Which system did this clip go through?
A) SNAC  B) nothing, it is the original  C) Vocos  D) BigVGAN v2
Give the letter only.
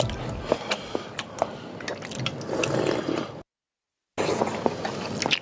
B